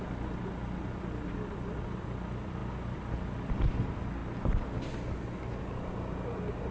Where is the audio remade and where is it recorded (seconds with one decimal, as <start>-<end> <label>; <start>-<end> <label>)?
0.0-6.7 recorded